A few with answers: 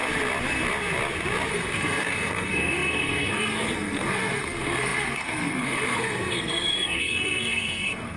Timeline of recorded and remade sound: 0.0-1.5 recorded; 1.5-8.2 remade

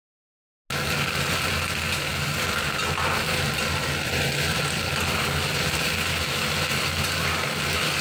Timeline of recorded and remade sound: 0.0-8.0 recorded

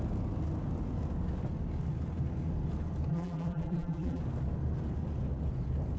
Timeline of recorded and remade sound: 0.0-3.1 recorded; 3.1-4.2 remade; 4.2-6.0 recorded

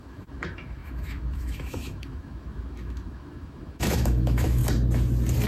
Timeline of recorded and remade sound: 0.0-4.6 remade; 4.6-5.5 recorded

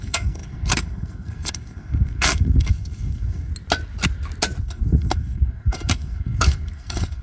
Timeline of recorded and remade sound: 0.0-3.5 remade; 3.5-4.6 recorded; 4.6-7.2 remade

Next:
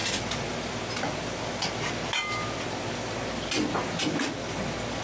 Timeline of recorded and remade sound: 0.0-5.0 recorded

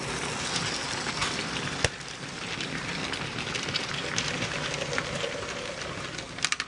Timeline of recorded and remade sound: 0.0-3.0 recorded; 3.0-3.9 remade; 3.9-6.7 recorded